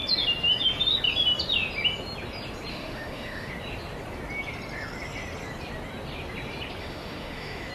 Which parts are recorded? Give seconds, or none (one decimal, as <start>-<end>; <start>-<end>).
0.0-2.7; 3.5-6.8

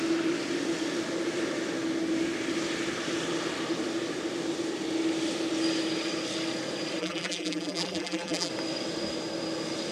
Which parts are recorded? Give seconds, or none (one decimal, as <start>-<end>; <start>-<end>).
0.0-7.0; 8.5-9.9

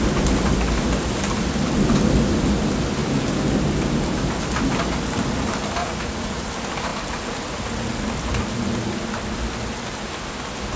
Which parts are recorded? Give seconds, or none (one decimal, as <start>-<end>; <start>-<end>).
0.0-5.8; 6.5-10.8

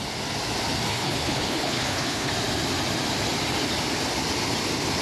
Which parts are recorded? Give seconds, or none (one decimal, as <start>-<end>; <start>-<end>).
0.0-0.9; 2.3-5.0

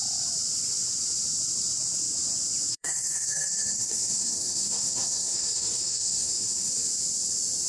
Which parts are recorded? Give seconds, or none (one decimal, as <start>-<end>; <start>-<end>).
0.0-2.7; 6.7-7.7

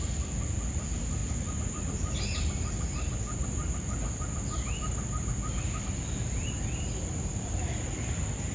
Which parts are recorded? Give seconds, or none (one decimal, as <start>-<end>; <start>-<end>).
0.0-8.5

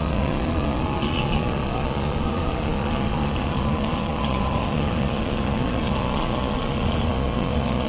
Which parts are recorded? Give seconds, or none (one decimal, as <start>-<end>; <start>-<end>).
none

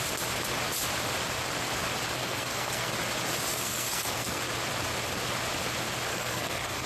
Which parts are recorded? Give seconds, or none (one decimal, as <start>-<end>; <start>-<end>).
0.0-2.2; 2.9-3.5; 4.4-6.1